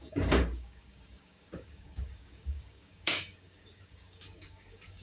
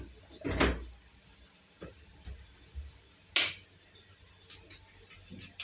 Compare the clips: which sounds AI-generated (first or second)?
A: first